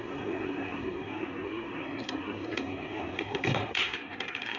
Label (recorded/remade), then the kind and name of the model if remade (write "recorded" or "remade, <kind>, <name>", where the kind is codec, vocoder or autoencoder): remade, codec, SNAC